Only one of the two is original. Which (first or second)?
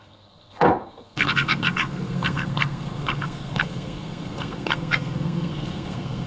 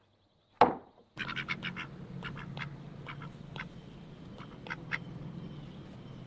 second